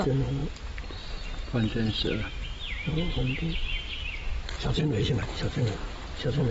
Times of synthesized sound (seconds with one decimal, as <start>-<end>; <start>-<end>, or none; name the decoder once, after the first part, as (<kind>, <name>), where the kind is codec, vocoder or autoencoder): 4.3-5.1 (vocoder, BigVGAN v2); 5.5-6.5